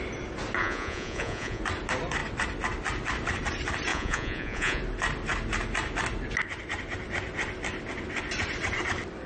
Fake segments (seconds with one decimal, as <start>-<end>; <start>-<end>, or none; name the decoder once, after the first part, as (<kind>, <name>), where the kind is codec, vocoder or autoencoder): 0.6-1.6 (vocoder, Vocos); 3.9-4.8